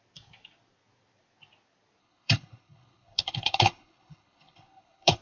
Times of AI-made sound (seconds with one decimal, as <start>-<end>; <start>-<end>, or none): 2.0-5.2